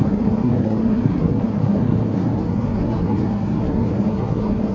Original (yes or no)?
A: no